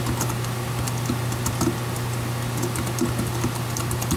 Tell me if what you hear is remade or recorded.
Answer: recorded